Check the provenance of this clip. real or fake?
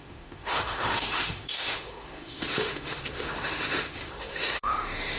fake